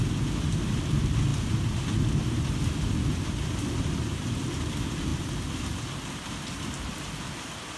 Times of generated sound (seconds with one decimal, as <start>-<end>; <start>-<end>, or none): none